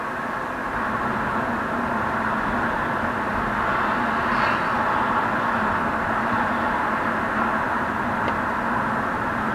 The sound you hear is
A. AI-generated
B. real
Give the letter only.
B